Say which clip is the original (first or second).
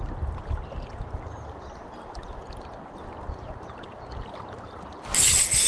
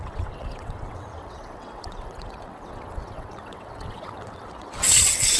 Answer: first